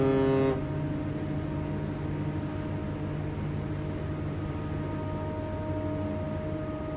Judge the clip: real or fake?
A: real